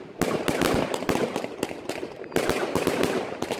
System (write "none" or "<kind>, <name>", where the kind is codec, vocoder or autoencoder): none